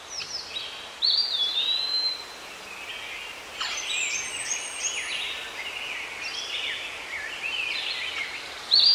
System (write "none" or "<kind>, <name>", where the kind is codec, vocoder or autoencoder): none